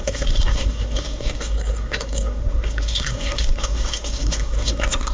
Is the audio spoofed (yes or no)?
yes